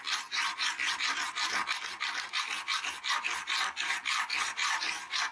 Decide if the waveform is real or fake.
real